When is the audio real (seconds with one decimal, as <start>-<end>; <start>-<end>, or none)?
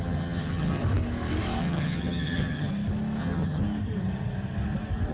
0.8-1.6; 2.7-3.2; 3.6-5.1